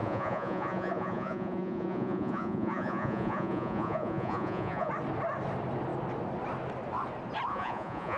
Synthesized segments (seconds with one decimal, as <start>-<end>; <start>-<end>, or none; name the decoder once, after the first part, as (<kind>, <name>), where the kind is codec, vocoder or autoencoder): 0.0-4.9 (vocoder, Vocos); 7.5-8.2